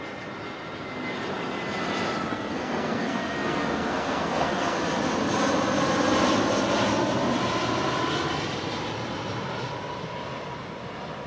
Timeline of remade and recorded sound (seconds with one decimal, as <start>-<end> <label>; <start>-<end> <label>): 0.0-2.3 recorded; 2.3-4.8 remade; 4.8-11.3 recorded